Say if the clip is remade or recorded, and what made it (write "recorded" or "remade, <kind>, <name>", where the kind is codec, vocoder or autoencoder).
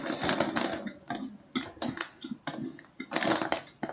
recorded